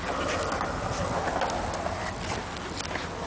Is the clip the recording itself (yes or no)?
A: yes